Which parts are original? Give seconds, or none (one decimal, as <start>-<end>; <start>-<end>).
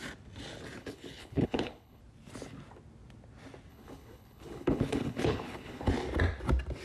0.0-0.8; 2.0-3.7; 5.9-6.8